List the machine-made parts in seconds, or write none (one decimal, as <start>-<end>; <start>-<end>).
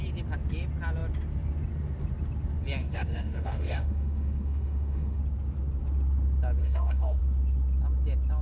2.8-5.2; 6.6-7.2